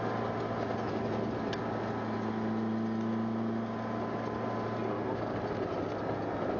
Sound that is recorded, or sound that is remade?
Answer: recorded